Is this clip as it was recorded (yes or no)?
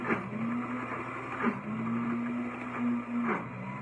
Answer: yes